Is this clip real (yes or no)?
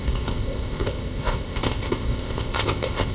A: no